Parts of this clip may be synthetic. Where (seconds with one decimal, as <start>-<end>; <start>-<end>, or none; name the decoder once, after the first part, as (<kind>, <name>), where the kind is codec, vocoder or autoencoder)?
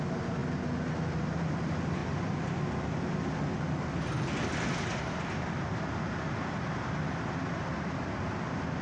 none